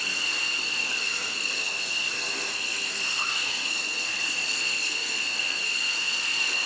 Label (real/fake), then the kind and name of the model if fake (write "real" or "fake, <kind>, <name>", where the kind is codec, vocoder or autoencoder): fake, codec, SNAC